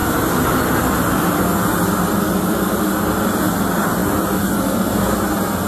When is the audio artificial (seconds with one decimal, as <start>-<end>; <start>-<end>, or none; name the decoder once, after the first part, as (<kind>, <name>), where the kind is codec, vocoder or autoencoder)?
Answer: 0.0-0.5 (vocoder, BigVGAN v2)